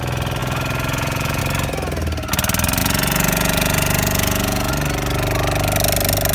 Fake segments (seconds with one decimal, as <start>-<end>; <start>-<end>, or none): 0.4-1.4; 2.8-4.7